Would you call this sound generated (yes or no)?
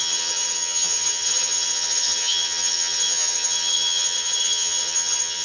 yes